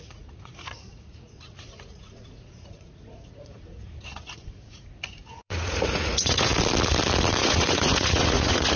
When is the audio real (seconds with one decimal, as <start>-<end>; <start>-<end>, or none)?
6.5-7.4